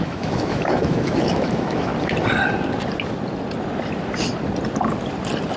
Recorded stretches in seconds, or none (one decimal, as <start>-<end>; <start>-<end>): 1.9-5.6